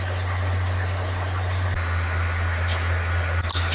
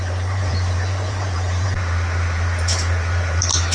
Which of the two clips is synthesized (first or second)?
second